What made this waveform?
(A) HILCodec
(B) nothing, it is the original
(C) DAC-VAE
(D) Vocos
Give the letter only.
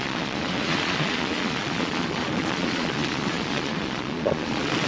D